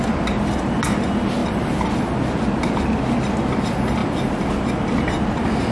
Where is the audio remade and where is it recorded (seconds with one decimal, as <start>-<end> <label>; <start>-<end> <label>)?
0.0-5.7 recorded